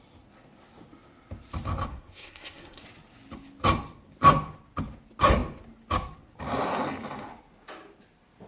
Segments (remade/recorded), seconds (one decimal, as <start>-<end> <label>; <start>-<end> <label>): 0.0-1.9 recorded; 1.9-2.8 remade; 2.8-8.5 recorded